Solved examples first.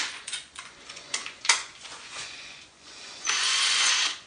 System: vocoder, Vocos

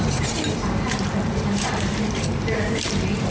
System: vocoder, BigVGAN v2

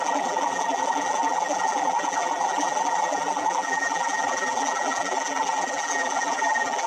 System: vocoder, BigVGAN v2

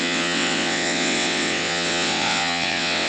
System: vocoder, WaveNeXt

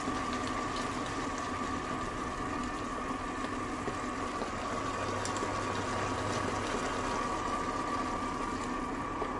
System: none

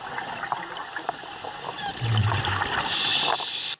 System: none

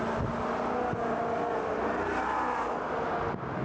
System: none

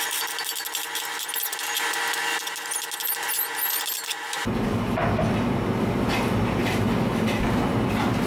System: none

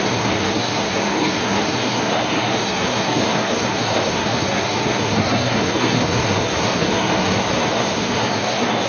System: codec, SNAC